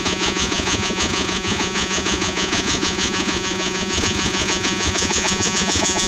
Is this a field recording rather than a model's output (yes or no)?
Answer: no